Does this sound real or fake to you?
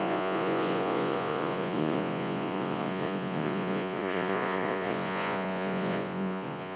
fake